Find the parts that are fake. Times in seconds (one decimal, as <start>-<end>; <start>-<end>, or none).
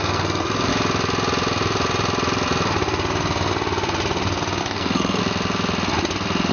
0.0-0.7; 4.6-5.2